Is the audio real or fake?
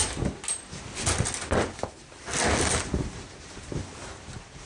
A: real